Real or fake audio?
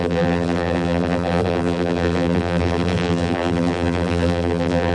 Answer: fake